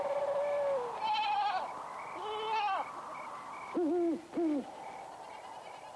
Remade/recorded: recorded